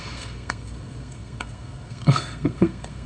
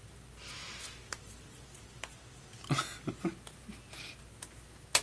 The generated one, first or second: first